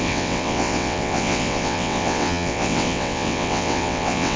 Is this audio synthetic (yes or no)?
yes